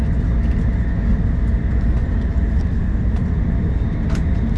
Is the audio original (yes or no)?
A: yes